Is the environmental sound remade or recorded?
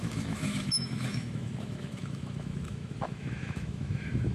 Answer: remade